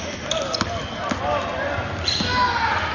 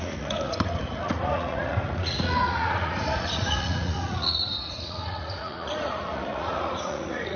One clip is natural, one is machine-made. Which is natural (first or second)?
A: first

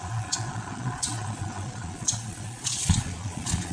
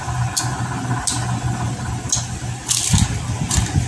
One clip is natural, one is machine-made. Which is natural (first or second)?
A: second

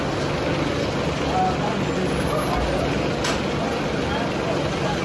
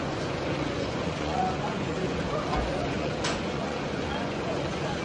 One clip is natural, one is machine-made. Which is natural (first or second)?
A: first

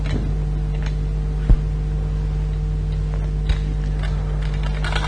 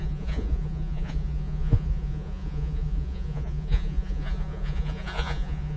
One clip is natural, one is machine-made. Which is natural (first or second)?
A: first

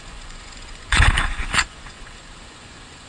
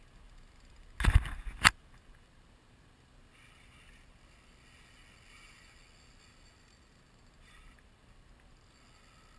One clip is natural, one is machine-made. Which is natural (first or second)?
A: second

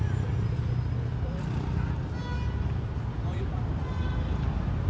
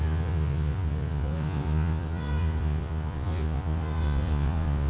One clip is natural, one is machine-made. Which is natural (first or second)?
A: first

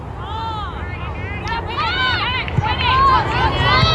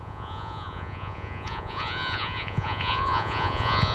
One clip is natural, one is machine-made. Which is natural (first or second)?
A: first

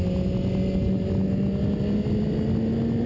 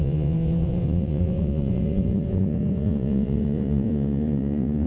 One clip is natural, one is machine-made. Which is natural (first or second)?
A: first